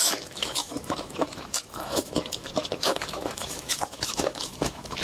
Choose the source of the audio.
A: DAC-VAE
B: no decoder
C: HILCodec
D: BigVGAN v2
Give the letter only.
A